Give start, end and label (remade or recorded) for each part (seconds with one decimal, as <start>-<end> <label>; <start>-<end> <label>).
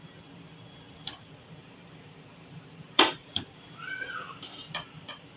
0.0-1.6 recorded; 1.6-4.1 remade; 4.1-5.4 recorded